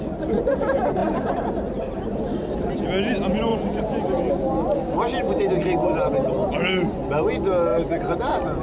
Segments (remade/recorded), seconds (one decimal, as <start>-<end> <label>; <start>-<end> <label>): 0.0-1.0 recorded; 1.0-2.8 remade; 2.8-8.6 recorded